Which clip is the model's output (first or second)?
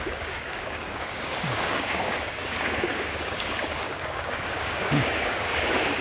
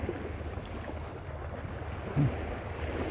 first